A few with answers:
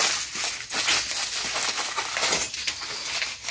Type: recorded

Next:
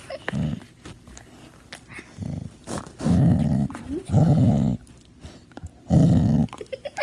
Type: recorded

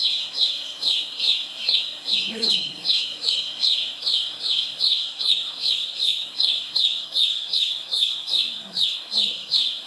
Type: remade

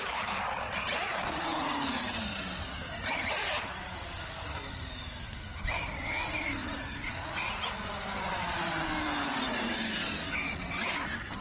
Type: recorded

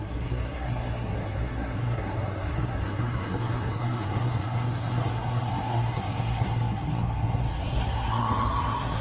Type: remade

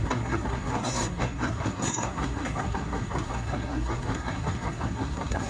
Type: remade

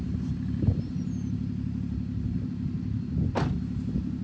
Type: recorded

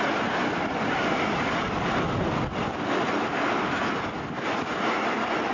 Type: recorded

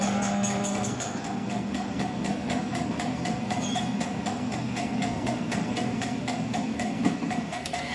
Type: remade